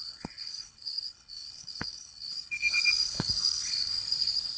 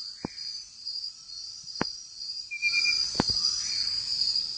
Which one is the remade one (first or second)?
first